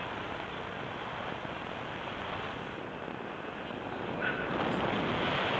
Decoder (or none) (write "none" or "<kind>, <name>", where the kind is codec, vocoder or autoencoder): none